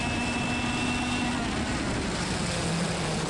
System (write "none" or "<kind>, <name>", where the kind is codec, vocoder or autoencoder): none